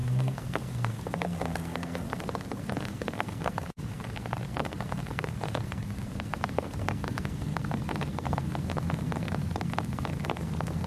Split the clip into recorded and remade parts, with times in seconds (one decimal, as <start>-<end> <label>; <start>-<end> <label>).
0.0-10.9 remade